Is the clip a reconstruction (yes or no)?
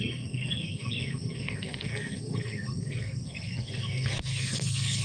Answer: yes